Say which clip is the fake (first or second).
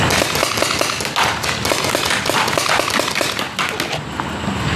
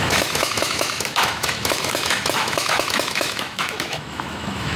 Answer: second